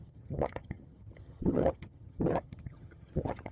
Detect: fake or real fake